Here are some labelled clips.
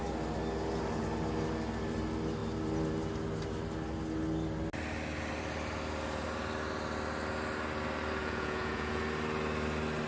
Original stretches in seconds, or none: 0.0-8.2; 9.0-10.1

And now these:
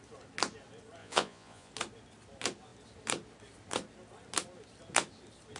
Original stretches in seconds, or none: 0.0-1.0; 1.7-5.6

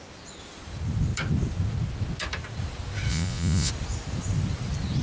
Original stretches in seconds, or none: 0.0-3.1; 3.7-5.0

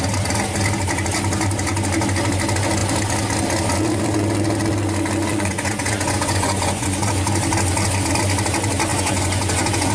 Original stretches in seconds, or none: 0.0-5.3; 7.1-8.9

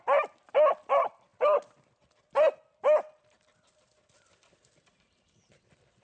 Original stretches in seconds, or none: 0.0-6.0

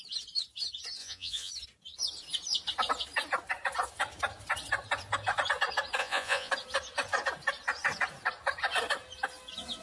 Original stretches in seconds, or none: 0.0-1.0; 1.5-6.0; 6.5-9.8

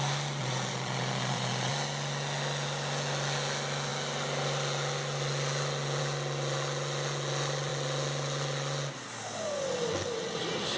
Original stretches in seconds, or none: 0.0-0.4; 1.7-10.8

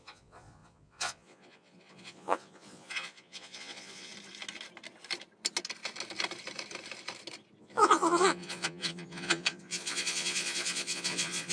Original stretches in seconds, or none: 4.1-7.6